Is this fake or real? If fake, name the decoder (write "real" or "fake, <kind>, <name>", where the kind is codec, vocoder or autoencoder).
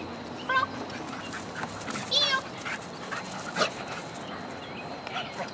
real